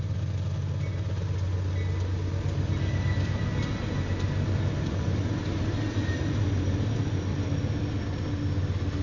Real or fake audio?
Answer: real